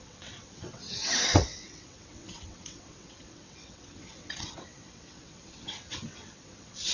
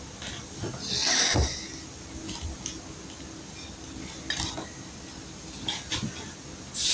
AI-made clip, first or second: first